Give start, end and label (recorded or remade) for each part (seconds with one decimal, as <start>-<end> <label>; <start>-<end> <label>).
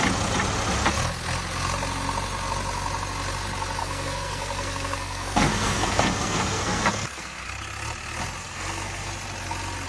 0.0-3.8 recorded; 3.8-7.5 remade; 7.5-8.4 recorded; 8.4-9.1 remade; 9.1-9.9 recorded